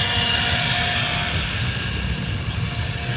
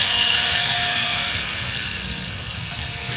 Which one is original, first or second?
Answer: first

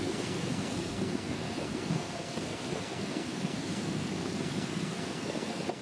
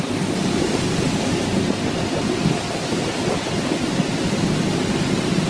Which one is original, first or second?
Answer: second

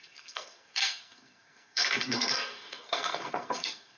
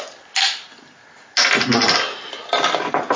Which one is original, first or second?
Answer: second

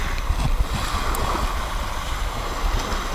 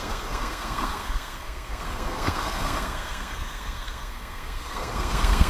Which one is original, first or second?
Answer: first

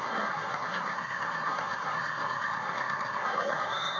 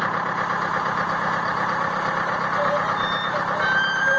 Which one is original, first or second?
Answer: second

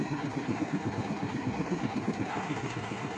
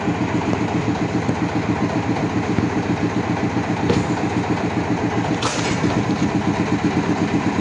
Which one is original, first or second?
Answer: second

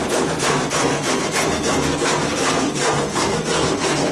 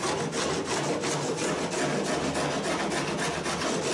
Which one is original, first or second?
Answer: second